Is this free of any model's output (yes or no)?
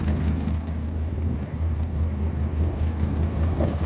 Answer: no